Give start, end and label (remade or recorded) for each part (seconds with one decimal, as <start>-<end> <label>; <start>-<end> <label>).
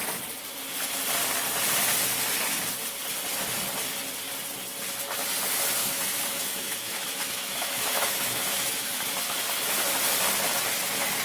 0.0-5.8 recorded; 5.8-9.1 remade; 9.1-11.2 recorded